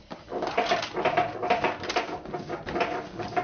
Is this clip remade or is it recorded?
recorded